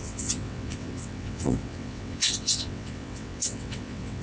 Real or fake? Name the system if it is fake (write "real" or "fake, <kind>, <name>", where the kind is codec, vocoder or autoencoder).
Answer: fake, vocoder, WaveNeXt